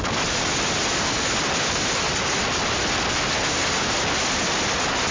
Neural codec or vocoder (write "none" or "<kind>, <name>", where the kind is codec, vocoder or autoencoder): none